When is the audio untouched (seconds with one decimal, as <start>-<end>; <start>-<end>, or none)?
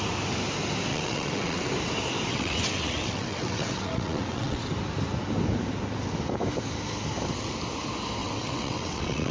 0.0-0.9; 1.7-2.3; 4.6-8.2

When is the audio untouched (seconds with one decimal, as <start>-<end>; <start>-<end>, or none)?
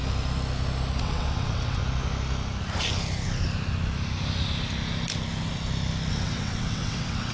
0.0-1.0; 1.8-6.1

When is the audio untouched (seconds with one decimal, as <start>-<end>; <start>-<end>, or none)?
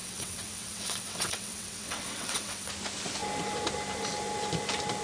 2.7-5.0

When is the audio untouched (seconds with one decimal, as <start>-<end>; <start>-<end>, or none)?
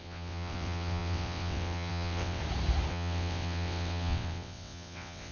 2.4-2.9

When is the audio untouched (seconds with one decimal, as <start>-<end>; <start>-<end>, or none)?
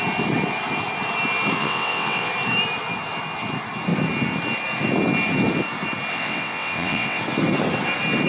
0.0-1.6; 2.3-6.1; 7.2-8.3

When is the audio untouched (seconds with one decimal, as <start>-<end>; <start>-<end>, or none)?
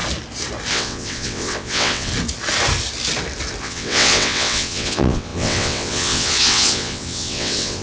0.0-0.7; 2.1-3.6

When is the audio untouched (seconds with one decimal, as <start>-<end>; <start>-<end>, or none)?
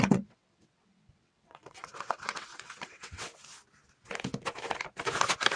3.3-5.6